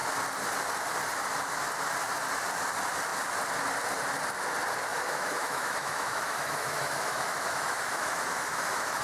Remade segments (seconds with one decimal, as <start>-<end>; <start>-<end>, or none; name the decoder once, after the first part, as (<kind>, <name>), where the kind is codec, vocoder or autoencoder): 4.9-9.0 (autoencoder, DAC-VAE)

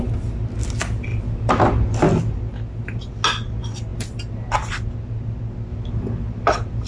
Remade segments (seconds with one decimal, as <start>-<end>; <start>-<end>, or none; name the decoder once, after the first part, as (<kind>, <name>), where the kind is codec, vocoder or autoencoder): 1.1-3.1 (vocoder, BigVGAN v2); 3.9-4.7; 5.7-6.9